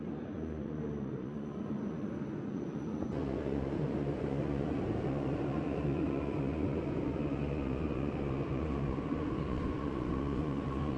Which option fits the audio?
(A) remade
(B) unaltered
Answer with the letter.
A